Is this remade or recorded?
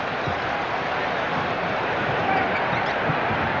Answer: recorded